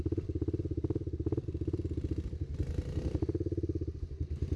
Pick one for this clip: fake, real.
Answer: real